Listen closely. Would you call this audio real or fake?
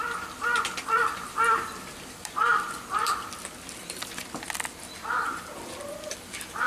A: fake